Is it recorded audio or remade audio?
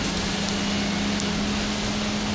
recorded